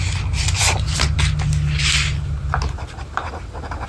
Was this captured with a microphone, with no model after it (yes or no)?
yes